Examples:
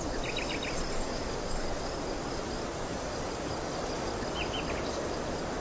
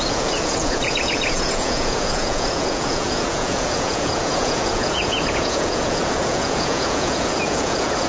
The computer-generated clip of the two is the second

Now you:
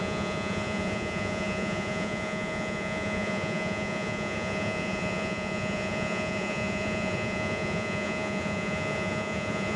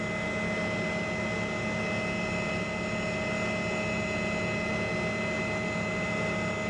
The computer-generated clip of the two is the first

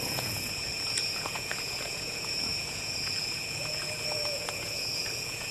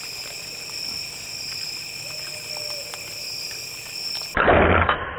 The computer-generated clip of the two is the first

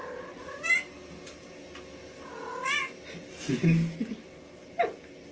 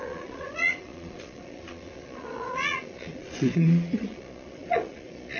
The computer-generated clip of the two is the second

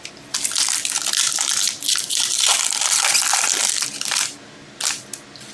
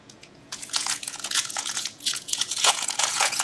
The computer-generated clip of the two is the second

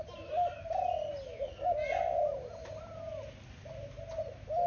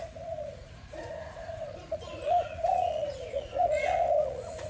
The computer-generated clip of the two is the second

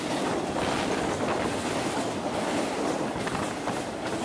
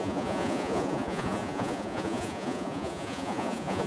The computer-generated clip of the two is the second